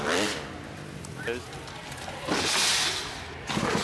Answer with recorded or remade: recorded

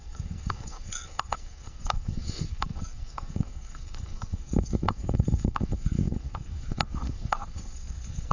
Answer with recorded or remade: remade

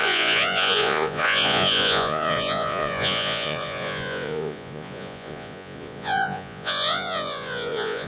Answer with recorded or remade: remade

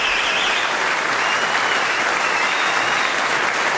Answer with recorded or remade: recorded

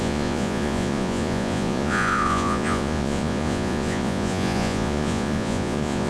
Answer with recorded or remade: remade